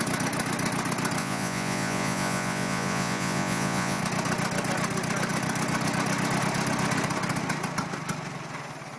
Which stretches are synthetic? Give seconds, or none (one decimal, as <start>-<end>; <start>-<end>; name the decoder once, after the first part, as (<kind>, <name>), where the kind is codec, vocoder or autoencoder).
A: 1.2-4.0 (vocoder, Vocos)